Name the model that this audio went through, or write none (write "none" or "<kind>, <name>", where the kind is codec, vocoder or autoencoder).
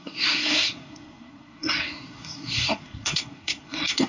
codec, SNAC